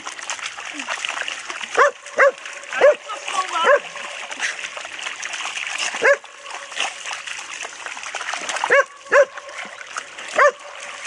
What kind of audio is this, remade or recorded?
recorded